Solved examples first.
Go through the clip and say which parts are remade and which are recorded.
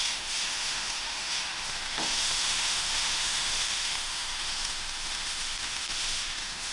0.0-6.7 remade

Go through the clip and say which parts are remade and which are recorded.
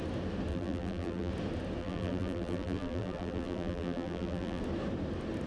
0.0-0.5 recorded; 0.5-1.3 remade; 1.3-1.8 recorded; 1.8-4.6 remade; 4.6-5.5 recorded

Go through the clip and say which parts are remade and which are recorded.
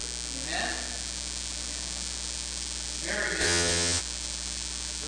0.0-3.4 recorded; 3.4-4.0 remade; 4.0-5.1 recorded